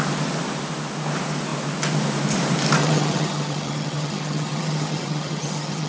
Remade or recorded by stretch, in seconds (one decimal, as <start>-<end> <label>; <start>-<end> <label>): 0.0-2.8 recorded; 2.8-5.9 remade